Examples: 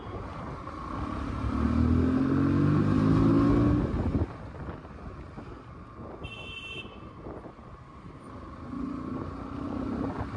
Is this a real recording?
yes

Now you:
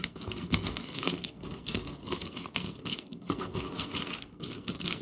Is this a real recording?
no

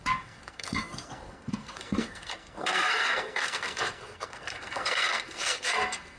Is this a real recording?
no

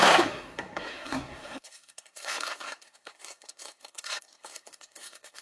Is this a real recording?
no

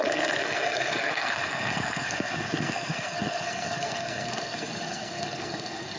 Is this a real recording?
no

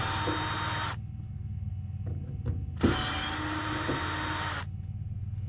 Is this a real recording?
yes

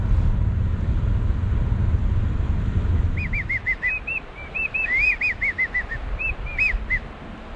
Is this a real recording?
yes